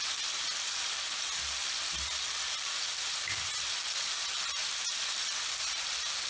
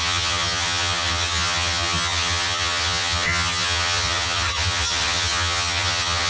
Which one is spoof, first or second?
second